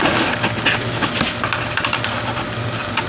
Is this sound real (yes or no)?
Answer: yes